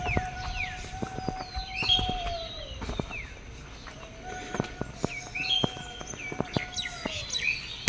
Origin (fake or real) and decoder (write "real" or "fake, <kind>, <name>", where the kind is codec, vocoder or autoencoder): real